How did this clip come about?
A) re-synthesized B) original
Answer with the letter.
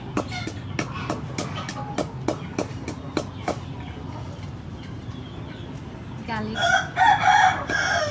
B